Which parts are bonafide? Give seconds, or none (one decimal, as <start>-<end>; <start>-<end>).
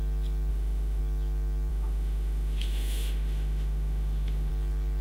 0.0-0.5; 1.0-1.7; 4.5-5.0